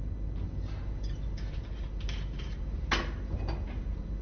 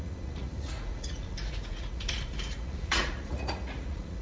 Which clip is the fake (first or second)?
second